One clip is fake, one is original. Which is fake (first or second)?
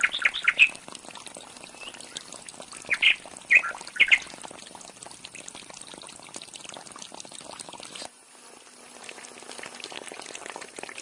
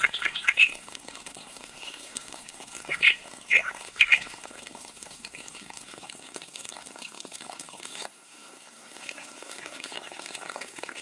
second